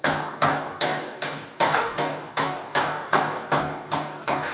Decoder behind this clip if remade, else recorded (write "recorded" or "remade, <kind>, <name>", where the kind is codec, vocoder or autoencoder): remade, codec, DAC